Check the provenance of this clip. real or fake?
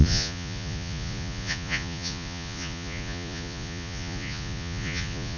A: fake